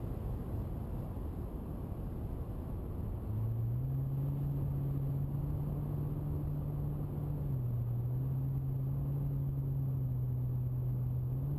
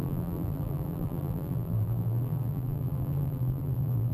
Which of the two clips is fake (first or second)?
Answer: second